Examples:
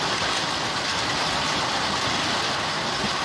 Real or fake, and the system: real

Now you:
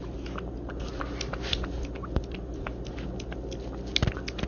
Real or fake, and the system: real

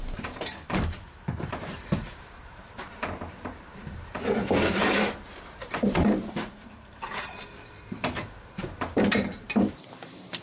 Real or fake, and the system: fake, vocoder, BigVGAN v2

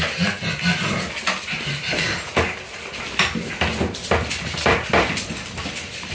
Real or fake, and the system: real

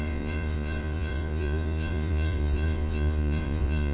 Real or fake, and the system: fake, vocoder, Vocos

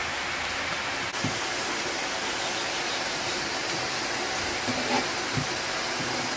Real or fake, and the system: real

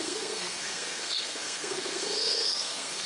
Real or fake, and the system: fake, codec, SNAC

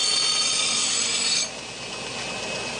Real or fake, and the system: real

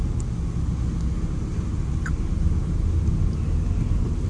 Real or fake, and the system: real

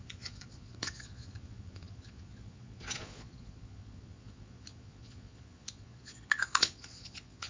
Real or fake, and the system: fake, vocoder, Vocos